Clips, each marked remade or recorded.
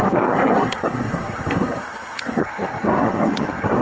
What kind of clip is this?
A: remade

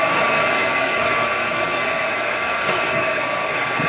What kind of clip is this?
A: remade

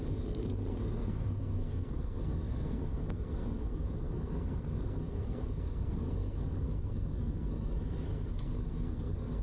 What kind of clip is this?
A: remade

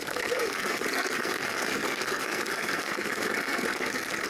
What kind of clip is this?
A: remade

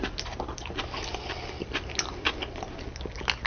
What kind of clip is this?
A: recorded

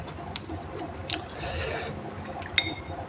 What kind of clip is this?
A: recorded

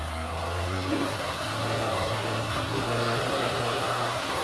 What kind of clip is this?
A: remade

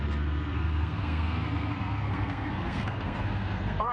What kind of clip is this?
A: remade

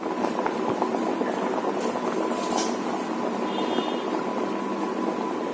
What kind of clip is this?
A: recorded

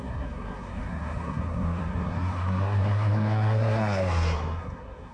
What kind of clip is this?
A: remade